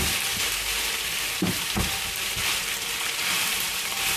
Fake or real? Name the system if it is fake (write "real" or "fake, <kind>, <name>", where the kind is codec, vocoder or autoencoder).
fake, vocoder, BigVGAN v2